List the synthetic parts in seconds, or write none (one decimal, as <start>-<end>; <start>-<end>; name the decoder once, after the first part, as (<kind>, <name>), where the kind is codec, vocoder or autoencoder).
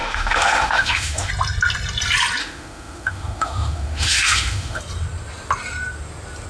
0.0-1.3 (autoencoder, DAC-VAE); 2.4-4.8